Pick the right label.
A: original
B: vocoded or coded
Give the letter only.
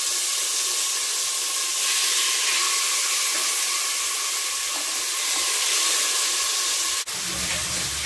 A